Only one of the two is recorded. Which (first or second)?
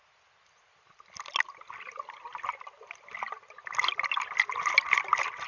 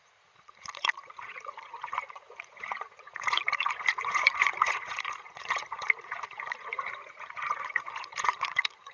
first